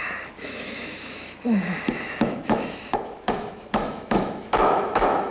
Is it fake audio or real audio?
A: fake